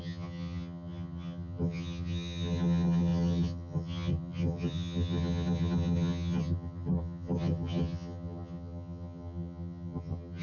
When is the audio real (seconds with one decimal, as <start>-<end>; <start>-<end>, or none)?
none